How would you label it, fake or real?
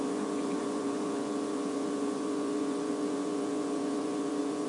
fake